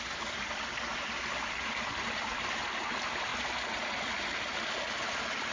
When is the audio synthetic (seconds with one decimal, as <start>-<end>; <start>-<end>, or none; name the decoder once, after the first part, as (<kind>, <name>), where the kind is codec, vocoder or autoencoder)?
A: none